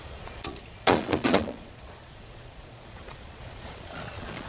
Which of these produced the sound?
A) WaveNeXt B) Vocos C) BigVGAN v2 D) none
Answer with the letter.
B